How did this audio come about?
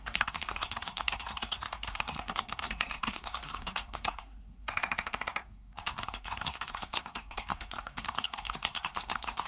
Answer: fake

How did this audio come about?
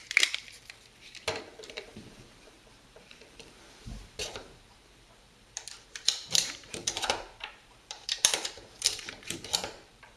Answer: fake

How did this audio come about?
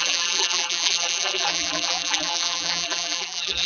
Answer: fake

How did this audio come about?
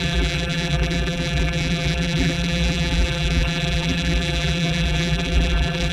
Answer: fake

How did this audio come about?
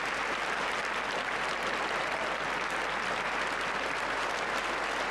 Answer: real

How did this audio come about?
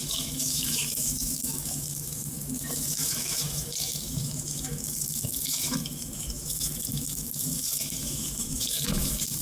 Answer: fake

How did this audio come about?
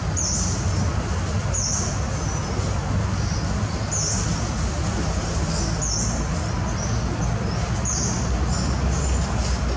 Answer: real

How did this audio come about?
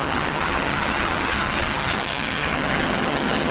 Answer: fake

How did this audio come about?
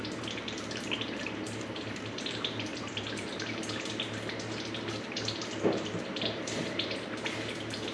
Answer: fake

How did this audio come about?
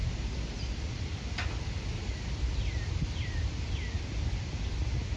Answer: real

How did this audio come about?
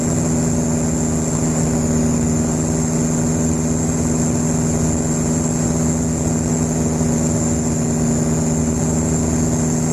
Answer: real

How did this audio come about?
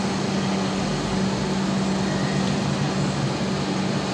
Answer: real